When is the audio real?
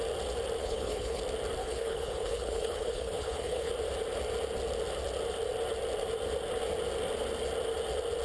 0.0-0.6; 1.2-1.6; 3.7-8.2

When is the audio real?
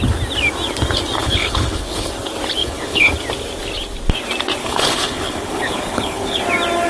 0.0-1.2; 2.1-2.6; 3.1-4.6; 6.4-6.9